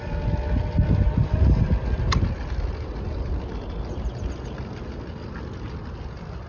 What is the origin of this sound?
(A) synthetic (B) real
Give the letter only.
B